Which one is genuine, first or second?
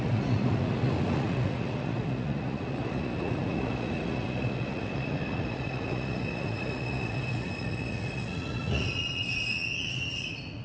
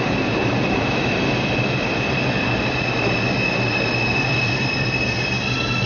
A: second